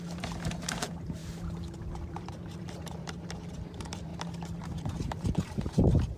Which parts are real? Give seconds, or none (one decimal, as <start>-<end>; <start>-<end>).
1.2-1.8; 4.1-4.6